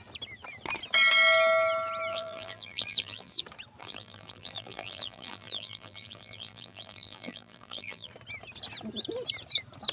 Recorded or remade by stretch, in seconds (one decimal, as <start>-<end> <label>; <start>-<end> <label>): 0.0-2.1 recorded; 2.1-3.4 remade; 3.4-3.8 recorded; 3.8-8.1 remade; 8.1-9.9 recorded